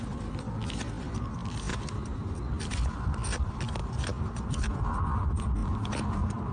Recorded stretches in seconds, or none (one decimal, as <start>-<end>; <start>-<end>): 0.0-1.7; 2.3-3.8; 4.9-5.6